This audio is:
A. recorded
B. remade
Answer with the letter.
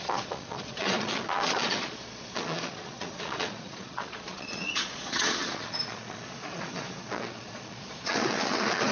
B